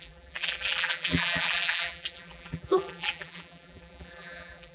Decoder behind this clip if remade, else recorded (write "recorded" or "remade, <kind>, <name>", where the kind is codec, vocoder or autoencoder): remade, vocoder, BigVGAN v2